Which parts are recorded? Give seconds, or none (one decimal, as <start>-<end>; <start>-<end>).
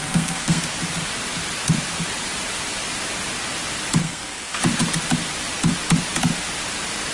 0.6-4.0; 4.6-7.1